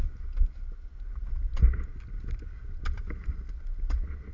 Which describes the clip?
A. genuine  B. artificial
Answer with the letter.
A